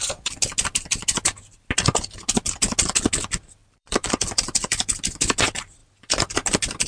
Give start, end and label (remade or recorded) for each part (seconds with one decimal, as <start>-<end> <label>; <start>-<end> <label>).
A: 0.0-3.6 recorded; 3.6-5.0 remade; 5.0-6.9 recorded

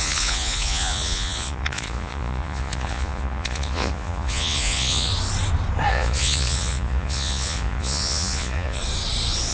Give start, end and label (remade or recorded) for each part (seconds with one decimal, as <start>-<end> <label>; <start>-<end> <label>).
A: 0.0-5.1 remade; 5.1-5.9 recorded; 5.9-8.8 remade; 8.8-9.5 recorded

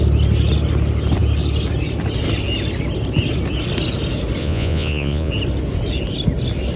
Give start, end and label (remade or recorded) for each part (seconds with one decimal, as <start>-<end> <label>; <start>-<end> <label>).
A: 0.0-4.4 recorded; 4.4-5.3 remade; 5.3-6.8 recorded

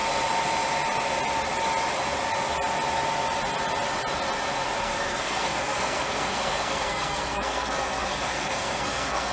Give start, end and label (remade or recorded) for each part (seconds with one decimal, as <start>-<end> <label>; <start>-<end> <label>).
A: 0.0-4.8 recorded; 4.8-9.3 remade

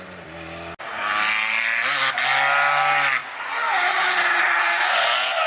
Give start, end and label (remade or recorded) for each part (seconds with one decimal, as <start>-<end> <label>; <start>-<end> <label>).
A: 0.0-5.5 recorded

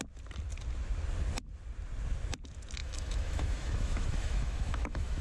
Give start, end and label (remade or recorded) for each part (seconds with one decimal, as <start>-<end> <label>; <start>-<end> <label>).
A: 0.0-2.8 recorded; 2.8-5.2 remade

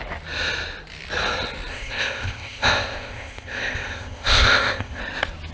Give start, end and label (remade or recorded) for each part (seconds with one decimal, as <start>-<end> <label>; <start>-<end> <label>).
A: 0.0-1.7 recorded; 1.7-5.0 remade; 5.0-5.5 recorded

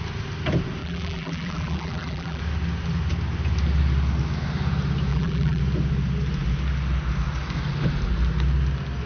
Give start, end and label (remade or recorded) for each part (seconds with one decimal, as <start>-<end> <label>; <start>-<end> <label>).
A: 0.0-0.8 recorded; 0.8-2.4 remade; 2.4-5.1 recorded; 5.1-5.6 remade; 5.6-9.1 recorded